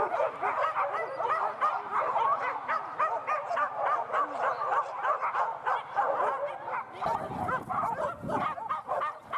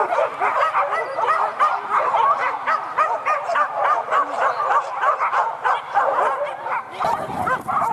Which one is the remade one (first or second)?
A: second